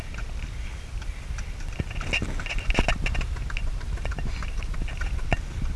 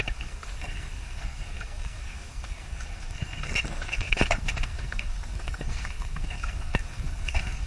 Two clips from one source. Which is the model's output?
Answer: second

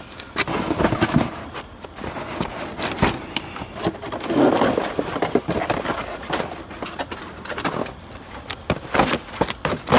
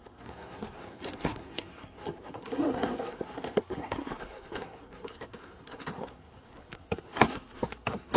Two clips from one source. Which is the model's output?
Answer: second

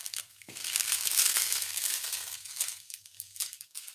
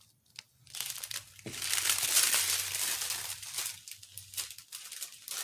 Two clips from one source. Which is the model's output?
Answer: first